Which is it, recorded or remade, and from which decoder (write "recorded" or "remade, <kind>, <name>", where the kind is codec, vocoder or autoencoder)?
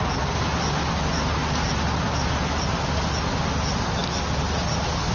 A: recorded